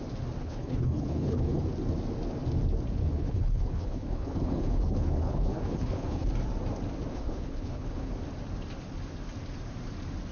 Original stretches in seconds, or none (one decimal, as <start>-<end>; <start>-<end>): 0.0-0.4; 1.6-3.0; 6.3-7.1; 8.1-10.3